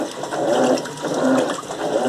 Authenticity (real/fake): real